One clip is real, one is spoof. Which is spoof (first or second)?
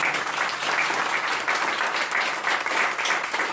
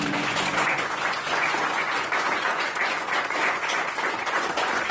second